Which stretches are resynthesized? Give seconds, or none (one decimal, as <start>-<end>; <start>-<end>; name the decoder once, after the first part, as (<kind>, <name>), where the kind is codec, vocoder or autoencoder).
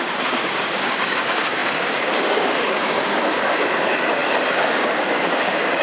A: 0.0-5.8 (codec, DAC)